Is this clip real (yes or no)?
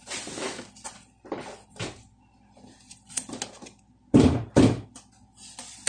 yes